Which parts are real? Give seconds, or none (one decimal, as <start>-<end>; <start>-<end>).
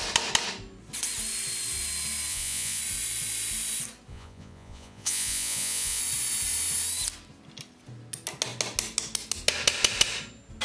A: 0.0-2.3; 2.8-4.1; 6.0-10.6